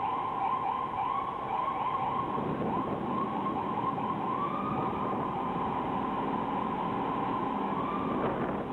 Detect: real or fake real